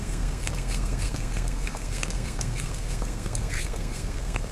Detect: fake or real fake